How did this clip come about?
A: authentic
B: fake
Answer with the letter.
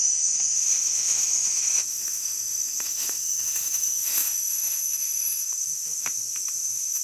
B